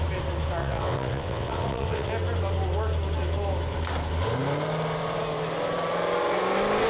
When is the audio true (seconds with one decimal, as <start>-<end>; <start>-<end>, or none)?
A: 0.0-0.6; 2.1-6.9